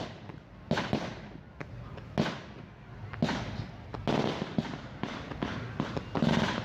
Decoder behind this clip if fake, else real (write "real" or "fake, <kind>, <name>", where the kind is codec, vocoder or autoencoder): real